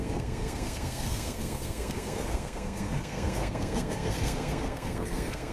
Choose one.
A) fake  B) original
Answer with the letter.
A